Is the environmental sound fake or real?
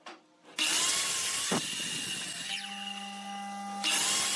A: real